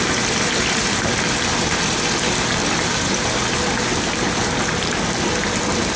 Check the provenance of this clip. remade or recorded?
recorded